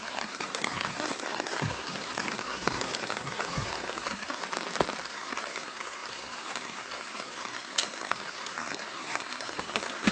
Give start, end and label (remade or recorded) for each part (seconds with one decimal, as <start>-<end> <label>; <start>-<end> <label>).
0.0-4.4 remade; 4.4-5.0 recorded; 5.0-10.1 remade